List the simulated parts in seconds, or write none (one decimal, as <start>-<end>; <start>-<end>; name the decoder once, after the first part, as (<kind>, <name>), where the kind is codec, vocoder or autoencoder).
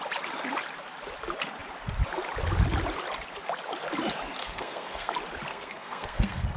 4.4-5.1 (codec, SNAC); 5.5-6.6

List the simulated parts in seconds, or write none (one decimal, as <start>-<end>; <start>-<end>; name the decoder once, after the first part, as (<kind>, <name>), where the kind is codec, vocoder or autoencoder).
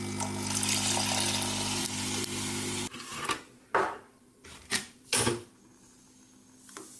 1.8-6.0 (vocoder, BigVGAN v2)